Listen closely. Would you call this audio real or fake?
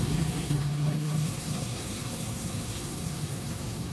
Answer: fake